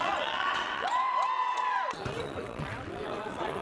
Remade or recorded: remade